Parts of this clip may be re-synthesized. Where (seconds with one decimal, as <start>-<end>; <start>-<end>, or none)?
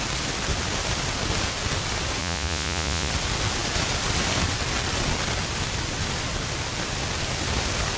2.2-3.1